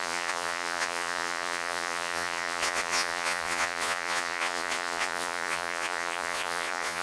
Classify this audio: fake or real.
fake